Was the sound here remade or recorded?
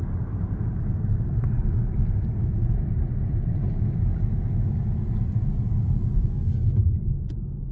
recorded